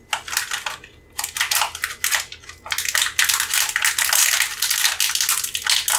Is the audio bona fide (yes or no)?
yes